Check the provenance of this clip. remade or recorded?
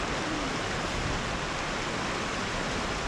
recorded